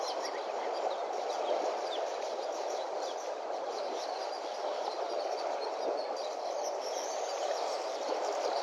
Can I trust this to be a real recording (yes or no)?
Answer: yes